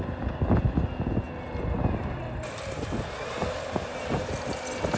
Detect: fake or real real